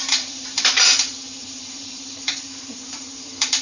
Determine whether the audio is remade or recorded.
remade